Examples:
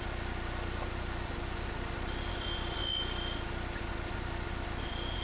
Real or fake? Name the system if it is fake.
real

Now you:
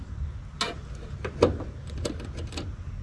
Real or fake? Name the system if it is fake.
real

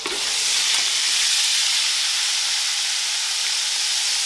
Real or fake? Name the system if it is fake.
real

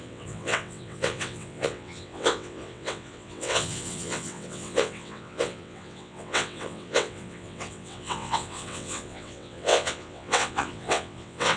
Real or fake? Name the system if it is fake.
fake, vocoder, WaveNeXt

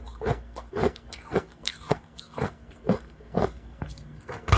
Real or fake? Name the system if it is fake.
fake, codec, SNAC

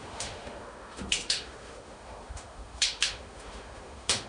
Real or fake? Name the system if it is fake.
fake, autoencoder, DAC-VAE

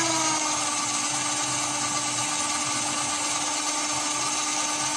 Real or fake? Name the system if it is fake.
real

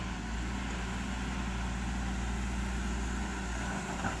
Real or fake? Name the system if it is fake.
real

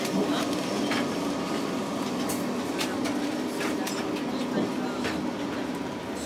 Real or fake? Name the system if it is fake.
real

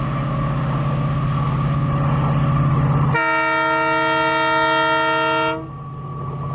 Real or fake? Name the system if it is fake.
real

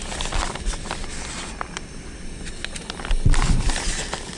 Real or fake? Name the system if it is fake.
real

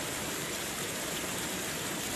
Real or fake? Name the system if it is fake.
fake, vocoder, BigVGAN v2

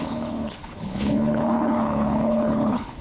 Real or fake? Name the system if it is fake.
fake, codec, HILCodec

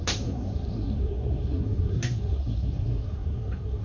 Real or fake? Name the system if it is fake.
fake, codec, SNAC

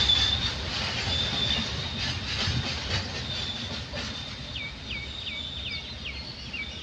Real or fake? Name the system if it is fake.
real